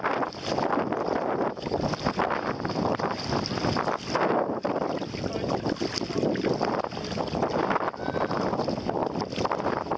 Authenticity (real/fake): real